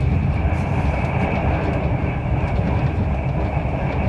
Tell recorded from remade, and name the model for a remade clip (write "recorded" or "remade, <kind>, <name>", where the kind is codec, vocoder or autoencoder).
remade, vocoder, BigVGAN v2